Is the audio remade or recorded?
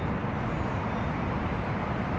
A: recorded